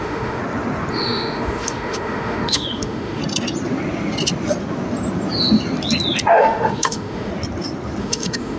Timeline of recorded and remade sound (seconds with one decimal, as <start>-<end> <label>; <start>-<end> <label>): 0.0-0.4 remade; 0.4-0.9 recorded; 0.9-3.2 remade; 3.2-6.3 recorded; 6.3-7.3 remade; 7.3-8.0 recorded; 8.0-8.6 remade